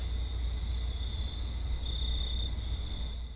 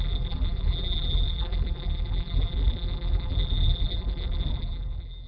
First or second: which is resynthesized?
second